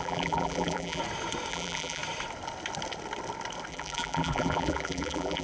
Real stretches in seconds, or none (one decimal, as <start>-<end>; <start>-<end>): 1.0-1.5; 2.0-3.7